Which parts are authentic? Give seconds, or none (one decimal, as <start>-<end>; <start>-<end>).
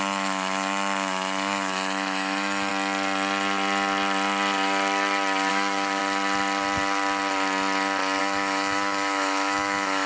2.7-5.5; 6.0-8.2